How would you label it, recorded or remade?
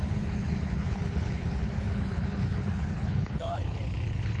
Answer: remade